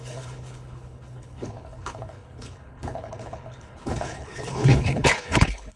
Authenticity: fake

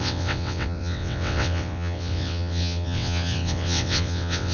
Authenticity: fake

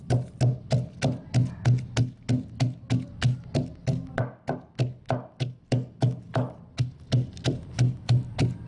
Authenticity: real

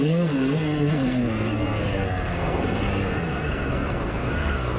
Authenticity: fake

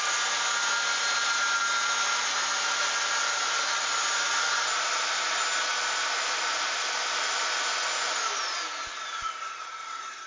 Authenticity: real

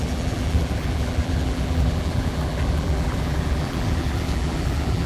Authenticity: fake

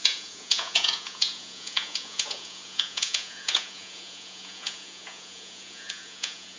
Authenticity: fake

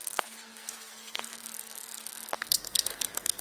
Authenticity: fake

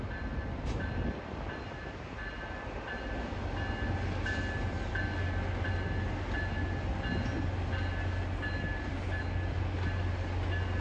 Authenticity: real